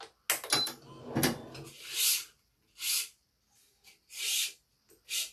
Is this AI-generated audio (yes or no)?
no